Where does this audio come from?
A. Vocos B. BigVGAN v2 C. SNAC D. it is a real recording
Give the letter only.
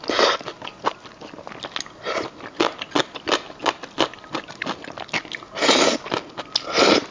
D